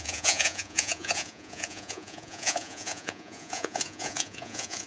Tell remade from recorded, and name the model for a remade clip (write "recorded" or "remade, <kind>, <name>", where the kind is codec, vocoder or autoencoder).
remade, vocoder, Vocos